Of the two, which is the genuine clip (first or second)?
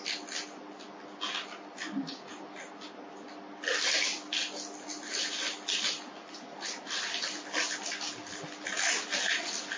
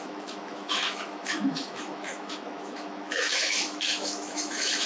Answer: first